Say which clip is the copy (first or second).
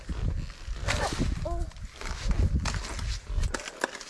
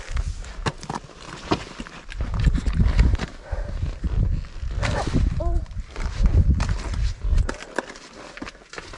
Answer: second